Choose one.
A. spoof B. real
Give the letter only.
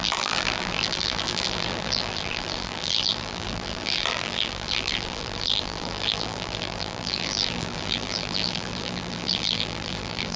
A